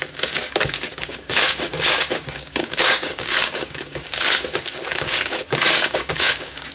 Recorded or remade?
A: remade